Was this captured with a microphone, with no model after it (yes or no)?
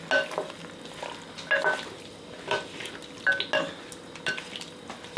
yes